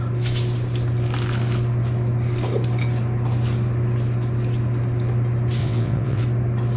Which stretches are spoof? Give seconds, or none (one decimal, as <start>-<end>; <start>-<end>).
5.6-6.2